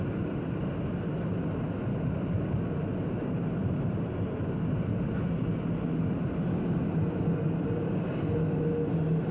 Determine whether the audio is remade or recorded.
recorded